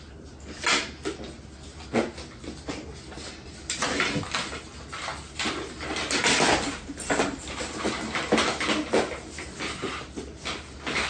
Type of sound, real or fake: real